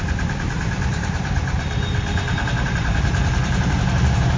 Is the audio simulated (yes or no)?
yes